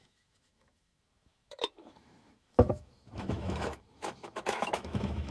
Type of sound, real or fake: fake